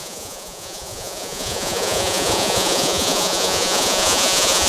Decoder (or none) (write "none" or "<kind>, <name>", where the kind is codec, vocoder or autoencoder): vocoder, Vocos